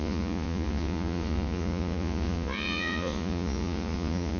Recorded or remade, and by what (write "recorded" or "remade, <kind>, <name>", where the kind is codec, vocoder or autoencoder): remade, vocoder, Vocos